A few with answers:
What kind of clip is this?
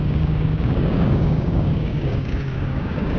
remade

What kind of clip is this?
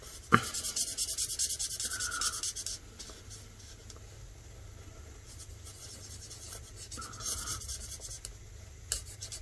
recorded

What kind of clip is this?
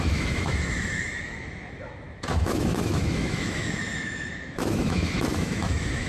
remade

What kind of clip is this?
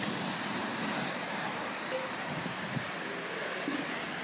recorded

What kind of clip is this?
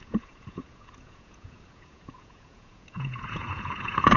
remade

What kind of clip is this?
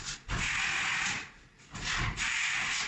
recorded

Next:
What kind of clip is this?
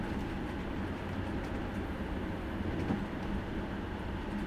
recorded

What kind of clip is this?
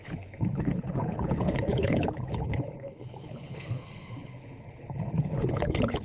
remade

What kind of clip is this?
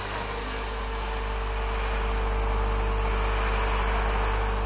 recorded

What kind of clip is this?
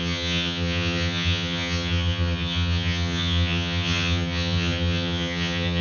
remade